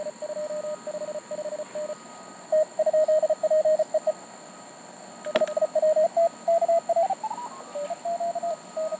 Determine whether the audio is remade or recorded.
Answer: recorded